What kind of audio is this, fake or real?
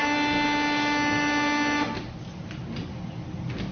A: real